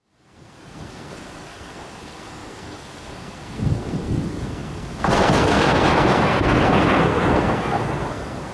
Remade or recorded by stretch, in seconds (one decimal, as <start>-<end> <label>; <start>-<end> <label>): 0.0-8.5 remade